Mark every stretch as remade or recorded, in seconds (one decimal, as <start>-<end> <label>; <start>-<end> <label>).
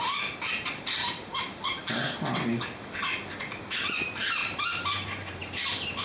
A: 0.0-1.0 recorded; 1.0-1.8 remade; 1.8-4.4 recorded; 4.4-6.0 remade